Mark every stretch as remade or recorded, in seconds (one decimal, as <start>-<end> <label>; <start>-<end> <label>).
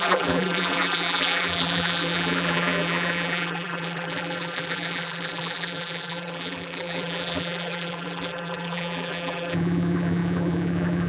0.0-11.1 remade